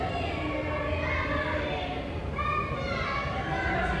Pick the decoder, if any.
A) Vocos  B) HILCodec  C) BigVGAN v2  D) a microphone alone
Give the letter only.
D